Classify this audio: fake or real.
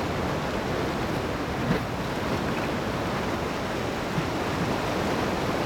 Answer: real